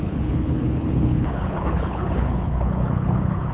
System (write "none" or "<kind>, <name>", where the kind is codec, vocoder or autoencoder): codec, HILCodec